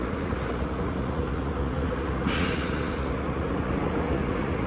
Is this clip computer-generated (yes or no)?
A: yes